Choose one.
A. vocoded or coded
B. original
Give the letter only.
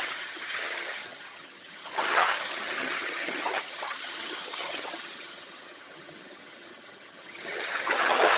A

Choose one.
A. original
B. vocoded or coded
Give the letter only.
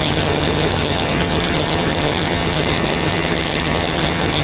B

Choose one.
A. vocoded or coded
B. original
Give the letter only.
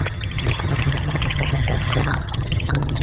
A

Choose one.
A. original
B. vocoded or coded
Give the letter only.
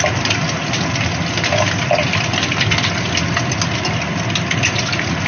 A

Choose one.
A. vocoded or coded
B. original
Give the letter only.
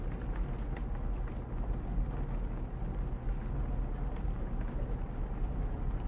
B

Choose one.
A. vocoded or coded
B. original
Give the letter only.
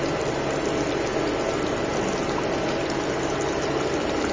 B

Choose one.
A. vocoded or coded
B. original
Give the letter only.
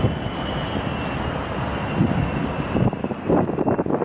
B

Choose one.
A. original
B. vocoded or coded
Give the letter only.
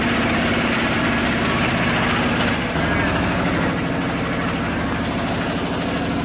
A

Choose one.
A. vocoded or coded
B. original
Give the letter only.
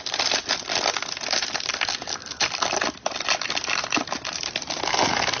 B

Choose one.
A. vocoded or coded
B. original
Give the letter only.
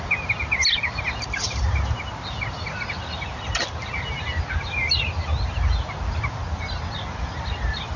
B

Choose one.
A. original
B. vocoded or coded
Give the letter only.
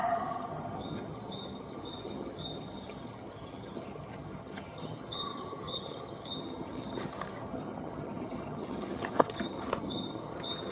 B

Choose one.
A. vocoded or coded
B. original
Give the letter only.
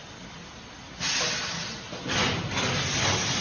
B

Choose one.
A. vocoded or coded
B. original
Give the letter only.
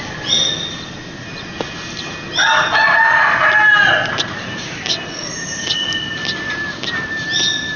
B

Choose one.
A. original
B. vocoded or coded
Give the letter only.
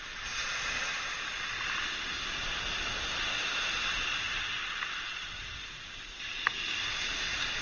A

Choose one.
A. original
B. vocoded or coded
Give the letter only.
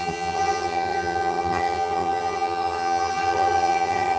B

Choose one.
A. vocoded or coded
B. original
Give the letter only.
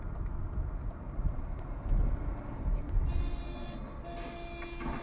B